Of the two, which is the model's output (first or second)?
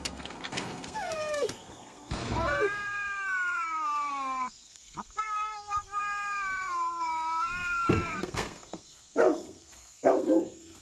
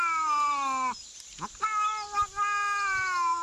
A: first